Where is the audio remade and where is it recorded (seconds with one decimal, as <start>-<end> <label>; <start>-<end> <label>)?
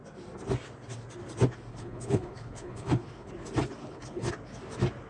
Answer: 0.0-1.7 recorded; 1.7-3.3 remade; 3.3-3.8 recorded; 3.8-4.3 remade; 4.3-5.1 recorded